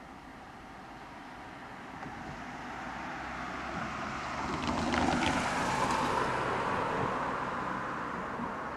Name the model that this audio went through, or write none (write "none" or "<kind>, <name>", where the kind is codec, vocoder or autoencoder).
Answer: none